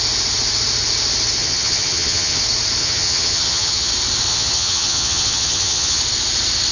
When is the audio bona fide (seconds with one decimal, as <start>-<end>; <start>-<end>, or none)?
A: 0.0-1.4; 2.4-2.8; 3.9-4.3; 6.0-6.7